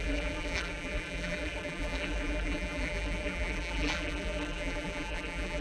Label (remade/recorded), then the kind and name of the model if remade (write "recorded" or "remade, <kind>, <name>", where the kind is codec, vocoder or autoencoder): remade, vocoder, BigVGAN v2